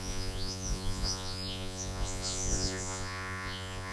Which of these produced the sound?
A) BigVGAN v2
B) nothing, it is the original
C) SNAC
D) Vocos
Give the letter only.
D